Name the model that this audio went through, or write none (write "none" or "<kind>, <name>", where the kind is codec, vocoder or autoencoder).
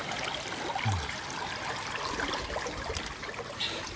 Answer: none